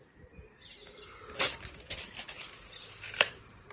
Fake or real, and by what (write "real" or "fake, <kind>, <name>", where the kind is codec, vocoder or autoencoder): real